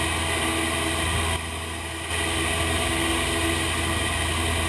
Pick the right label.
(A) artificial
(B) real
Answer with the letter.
B